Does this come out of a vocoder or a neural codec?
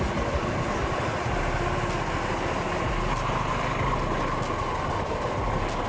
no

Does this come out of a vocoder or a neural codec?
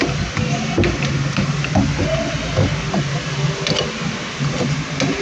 no